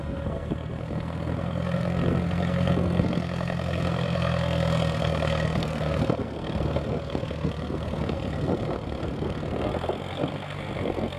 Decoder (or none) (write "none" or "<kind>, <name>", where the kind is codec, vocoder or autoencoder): codec, SNAC